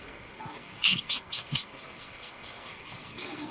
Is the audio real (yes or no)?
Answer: no